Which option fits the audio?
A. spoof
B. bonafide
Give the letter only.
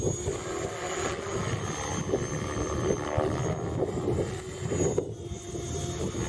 B